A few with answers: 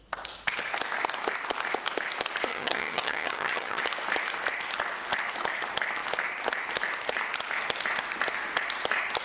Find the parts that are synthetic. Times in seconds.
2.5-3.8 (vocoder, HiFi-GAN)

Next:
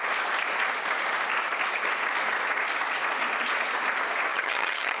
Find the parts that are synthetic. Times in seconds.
4.3-5.0 (vocoder, HiFi-GAN)